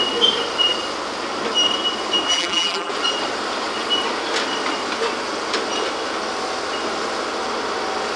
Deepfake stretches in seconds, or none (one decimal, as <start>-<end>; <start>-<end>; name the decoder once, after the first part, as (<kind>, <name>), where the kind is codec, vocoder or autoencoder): 2.3-2.9 (vocoder, BigVGAN v2)